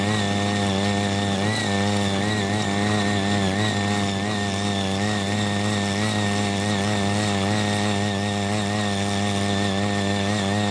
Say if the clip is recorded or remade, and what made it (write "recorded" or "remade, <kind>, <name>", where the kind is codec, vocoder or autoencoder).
recorded